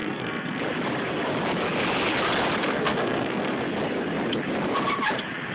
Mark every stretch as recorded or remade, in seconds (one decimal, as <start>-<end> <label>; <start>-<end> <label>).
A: 0.0-0.6 remade; 0.6-2.6 recorded; 2.6-3.6 remade; 3.6-5.5 recorded